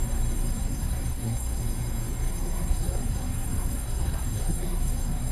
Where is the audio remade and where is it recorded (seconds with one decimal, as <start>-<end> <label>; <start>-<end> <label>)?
0.0-0.5 recorded; 0.5-1.6 remade; 1.6-2.3 recorded; 2.3-5.3 remade